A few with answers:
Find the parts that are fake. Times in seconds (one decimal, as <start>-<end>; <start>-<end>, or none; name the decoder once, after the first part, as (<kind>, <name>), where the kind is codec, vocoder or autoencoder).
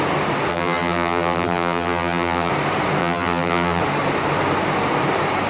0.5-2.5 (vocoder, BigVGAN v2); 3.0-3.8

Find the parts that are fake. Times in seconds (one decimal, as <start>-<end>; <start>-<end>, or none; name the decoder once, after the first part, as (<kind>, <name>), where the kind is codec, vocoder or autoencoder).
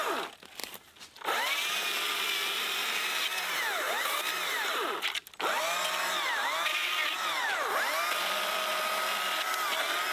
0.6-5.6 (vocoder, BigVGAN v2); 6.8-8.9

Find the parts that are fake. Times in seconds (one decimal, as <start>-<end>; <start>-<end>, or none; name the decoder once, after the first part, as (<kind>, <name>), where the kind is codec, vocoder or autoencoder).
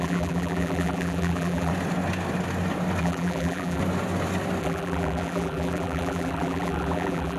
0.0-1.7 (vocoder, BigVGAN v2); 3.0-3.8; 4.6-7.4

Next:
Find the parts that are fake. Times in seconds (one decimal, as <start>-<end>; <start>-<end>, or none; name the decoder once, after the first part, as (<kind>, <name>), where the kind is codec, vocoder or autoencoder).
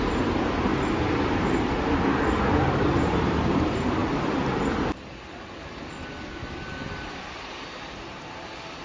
0.0-0.7 (vocoder, BigVGAN v2); 1.3-4.0